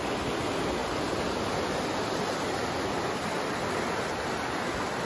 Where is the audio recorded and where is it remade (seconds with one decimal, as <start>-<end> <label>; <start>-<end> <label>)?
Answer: 0.0-5.1 recorded